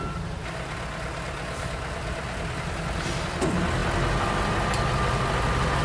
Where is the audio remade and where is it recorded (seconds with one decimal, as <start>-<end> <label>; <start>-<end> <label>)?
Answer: 0.0-5.8 recorded